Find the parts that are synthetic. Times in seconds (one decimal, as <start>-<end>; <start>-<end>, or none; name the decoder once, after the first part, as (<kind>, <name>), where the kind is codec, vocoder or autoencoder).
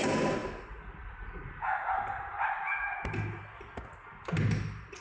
none